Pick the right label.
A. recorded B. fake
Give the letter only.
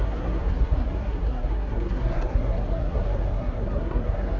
B